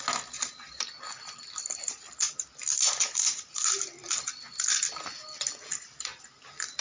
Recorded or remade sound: recorded